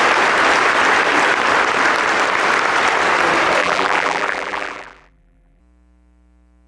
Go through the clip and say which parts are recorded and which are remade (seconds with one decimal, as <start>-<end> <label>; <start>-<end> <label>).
0.0-3.6 recorded; 3.6-5.6 remade; 5.6-6.7 recorded